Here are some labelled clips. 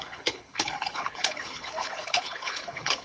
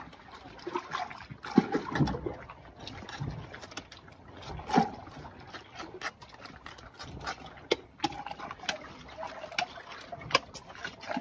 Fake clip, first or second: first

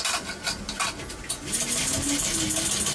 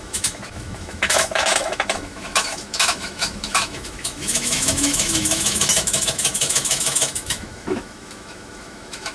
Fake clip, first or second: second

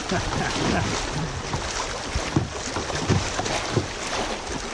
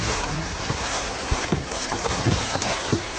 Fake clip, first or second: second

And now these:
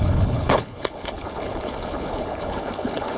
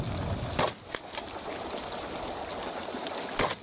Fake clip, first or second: first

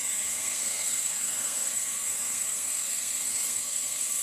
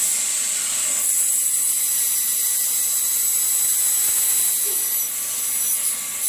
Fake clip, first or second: first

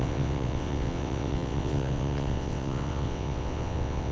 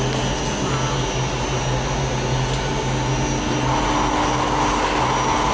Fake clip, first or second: first